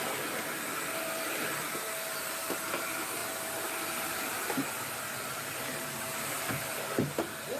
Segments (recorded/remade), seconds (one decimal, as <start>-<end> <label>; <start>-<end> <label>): 0.0-7.6 recorded